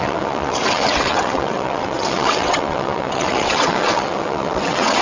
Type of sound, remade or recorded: remade